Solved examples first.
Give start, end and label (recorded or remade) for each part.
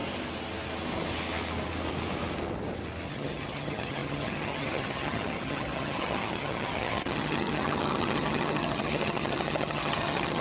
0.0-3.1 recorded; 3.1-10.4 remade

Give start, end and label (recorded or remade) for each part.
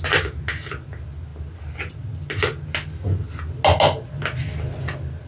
0.0-5.3 recorded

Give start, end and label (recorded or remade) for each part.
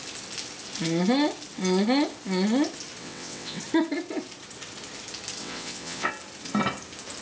0.0-3.0 recorded; 3.0-3.6 remade; 3.6-5.4 recorded; 5.4-6.1 remade; 6.1-7.2 recorded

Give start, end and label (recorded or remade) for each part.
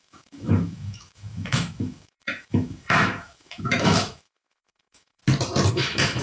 0.0-5.2 remade; 5.2-5.7 recorded; 5.7-6.2 remade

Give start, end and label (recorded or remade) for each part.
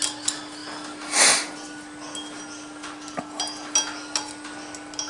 0.0-5.1 recorded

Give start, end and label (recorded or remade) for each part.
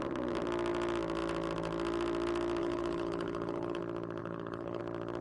0.0-2.6 recorded; 2.6-3.8 remade; 3.8-4.2 recorded; 4.2-4.8 remade; 4.8-5.2 recorded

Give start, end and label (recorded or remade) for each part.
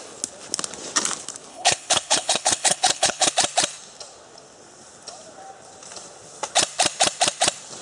0.0-1.5 recorded; 1.5-3.3 remade; 3.3-7.8 recorded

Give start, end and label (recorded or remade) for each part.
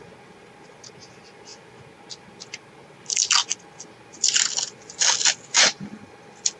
0.0-6.6 recorded